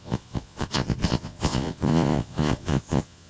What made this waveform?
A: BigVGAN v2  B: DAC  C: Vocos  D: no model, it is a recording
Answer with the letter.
C